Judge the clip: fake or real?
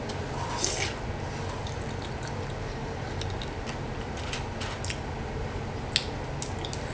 real